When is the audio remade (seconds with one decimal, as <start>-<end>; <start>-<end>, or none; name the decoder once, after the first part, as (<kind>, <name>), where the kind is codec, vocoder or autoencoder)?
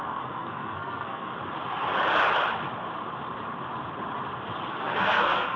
0.0-1.3 (codec, SNAC); 4.7-5.6